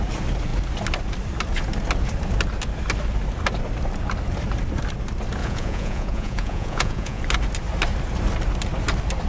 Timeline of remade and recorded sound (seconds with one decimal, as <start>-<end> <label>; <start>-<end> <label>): 0.0-5.4 recorded; 5.4-7.2 remade; 7.2-9.3 recorded